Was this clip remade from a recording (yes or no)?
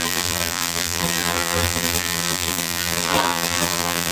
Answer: yes